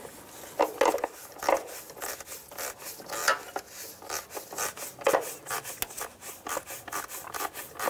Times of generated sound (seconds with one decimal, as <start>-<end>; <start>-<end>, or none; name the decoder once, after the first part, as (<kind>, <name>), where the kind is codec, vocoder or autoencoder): none